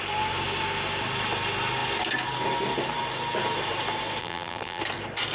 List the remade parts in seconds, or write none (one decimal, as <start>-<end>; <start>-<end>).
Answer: 4.2-4.8